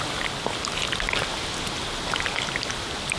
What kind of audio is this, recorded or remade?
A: recorded